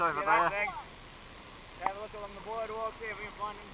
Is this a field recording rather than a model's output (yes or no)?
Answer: yes